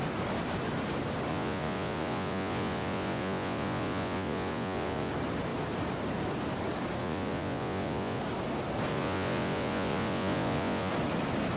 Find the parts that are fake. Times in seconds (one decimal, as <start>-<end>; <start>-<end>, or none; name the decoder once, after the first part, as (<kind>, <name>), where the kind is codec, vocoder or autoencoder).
1.3-5.1 (vocoder, Vocos); 7.0-8.2; 8.9-10.9